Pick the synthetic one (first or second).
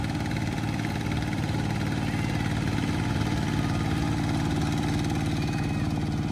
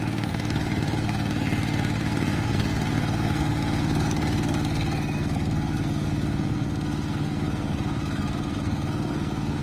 second